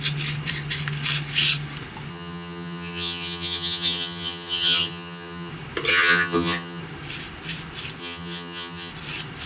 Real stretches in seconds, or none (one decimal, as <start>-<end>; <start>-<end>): 0.0-2.1; 5.5-5.9; 6.8-8.0; 8.9-9.5